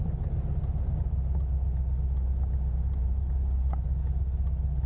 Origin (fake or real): real